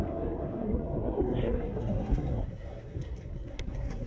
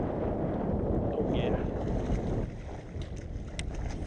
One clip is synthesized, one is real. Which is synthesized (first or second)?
first